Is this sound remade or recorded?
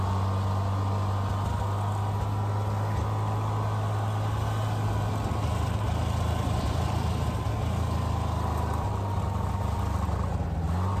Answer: recorded